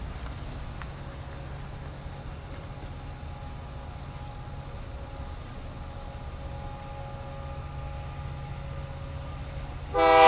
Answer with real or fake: real